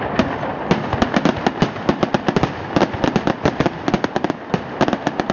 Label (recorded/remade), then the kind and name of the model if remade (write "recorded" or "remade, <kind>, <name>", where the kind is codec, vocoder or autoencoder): recorded